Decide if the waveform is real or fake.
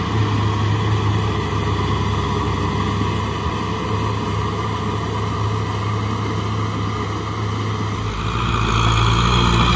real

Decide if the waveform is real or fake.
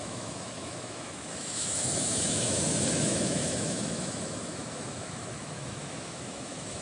fake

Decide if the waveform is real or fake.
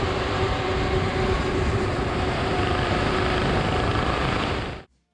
fake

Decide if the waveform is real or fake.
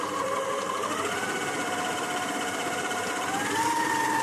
fake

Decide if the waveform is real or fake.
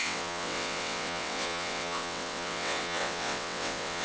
fake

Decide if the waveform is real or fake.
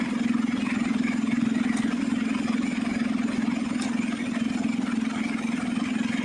real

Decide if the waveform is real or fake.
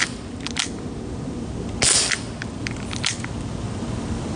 real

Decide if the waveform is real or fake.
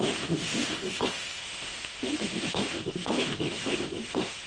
fake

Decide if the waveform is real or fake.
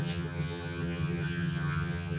fake